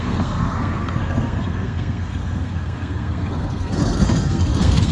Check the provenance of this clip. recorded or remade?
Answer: remade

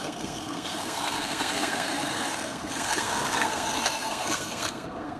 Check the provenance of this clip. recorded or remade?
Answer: remade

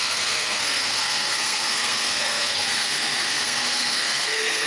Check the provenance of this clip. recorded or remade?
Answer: remade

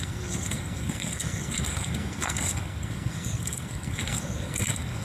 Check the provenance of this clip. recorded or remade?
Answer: remade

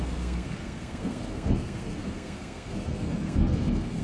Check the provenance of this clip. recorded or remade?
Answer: remade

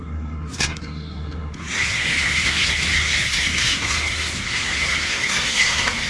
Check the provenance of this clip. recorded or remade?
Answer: remade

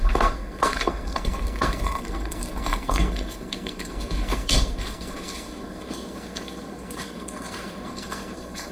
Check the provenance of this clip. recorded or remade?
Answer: remade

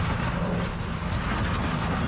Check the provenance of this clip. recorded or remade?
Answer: recorded